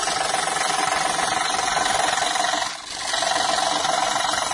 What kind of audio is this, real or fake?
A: real